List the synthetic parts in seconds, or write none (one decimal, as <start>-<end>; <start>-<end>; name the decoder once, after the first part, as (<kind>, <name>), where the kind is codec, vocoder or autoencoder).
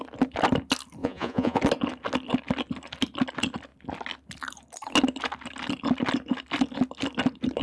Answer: 1.0-1.6 (vocoder, Vocos)